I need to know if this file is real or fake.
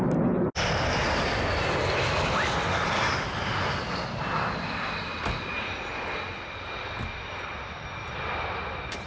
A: real